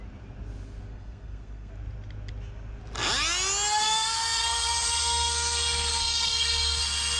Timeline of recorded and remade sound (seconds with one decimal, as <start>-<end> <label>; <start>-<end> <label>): 0.0-0.9 recorded; 0.9-1.7 remade; 1.7-3.8 recorded; 3.8-7.2 remade